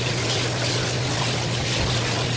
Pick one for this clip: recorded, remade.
recorded